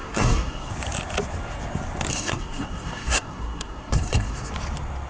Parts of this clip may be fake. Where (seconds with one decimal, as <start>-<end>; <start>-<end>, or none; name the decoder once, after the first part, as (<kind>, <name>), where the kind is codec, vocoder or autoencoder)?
0.0-0.7 (codec, SNAC); 2.1-4.5